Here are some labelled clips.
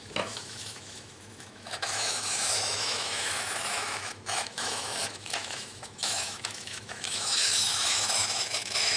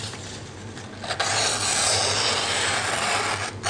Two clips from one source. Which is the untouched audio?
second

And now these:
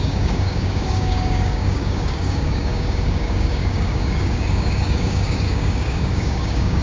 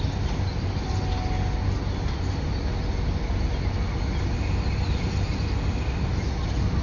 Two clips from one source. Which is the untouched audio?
second